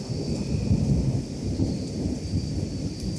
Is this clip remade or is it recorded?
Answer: remade